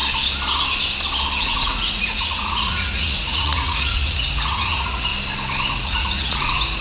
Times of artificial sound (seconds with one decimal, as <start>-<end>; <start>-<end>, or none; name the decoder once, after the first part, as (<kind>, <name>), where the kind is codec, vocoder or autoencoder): 1.4-5.1 (vocoder, Vocos); 5.7-6.8